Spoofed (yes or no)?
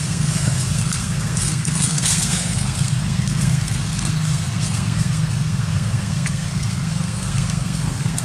yes